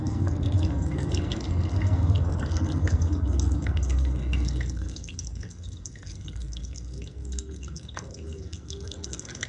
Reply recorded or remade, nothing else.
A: remade